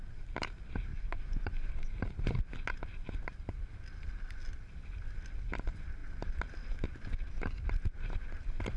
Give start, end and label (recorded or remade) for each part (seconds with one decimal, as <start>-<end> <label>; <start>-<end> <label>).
0.0-0.9 recorded; 0.9-1.7 remade; 1.7-8.8 recorded